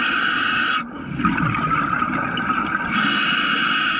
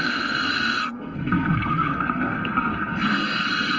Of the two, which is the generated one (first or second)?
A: second